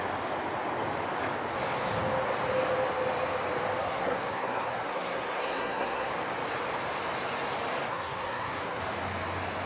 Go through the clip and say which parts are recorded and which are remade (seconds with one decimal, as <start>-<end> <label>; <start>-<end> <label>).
0.0-3.8 recorded; 3.8-6.1 remade; 6.1-7.9 recorded; 7.9-8.8 remade; 8.8-9.7 recorded